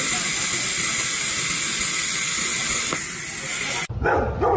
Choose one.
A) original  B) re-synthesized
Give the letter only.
A